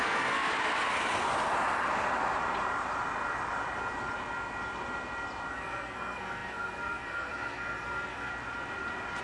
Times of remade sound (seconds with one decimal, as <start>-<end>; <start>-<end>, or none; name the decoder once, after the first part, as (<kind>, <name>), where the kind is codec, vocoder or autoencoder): 0.0-0.5 (codec, SNAC); 5.5-8.3